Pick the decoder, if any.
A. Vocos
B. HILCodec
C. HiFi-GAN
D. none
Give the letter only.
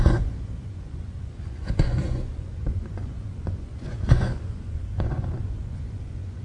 A